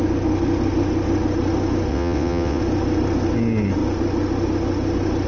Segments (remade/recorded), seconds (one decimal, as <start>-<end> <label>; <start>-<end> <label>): 0.0-1.9 recorded; 1.9-2.6 remade; 2.6-5.3 recorded